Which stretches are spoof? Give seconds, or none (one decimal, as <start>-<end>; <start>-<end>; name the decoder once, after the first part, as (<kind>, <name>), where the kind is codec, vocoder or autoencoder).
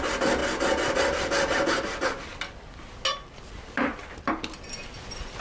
none